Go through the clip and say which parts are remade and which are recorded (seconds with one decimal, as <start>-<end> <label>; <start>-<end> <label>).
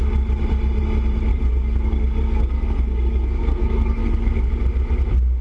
0.0-1.3 recorded; 1.3-4.5 remade; 4.5-5.4 recorded